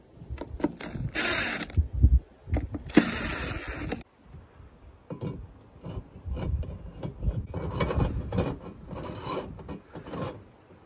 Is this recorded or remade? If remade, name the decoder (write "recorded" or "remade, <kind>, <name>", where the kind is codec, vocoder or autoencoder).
recorded